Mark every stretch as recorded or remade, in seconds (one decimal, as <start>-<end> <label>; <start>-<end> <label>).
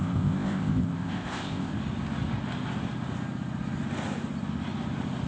0.0-1.7 remade; 1.7-5.3 recorded